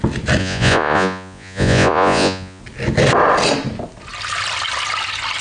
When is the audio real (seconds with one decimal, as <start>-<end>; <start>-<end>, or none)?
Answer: 0.0-0.4; 2.6-5.4